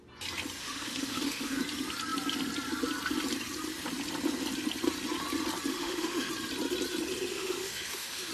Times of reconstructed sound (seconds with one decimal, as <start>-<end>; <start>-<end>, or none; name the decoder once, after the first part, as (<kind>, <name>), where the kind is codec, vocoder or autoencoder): 0.6-1.6 (autoencoder, DAC-VAE); 5.7-6.3; 7.3-8.3